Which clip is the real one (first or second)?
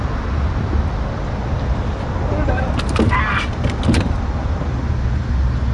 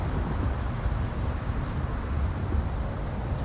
first